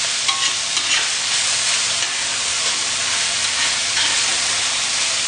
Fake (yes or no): no